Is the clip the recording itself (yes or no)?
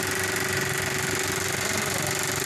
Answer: yes